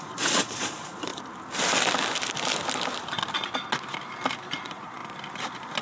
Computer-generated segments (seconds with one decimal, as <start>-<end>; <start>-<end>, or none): 0.0-1.1; 4.6-5.0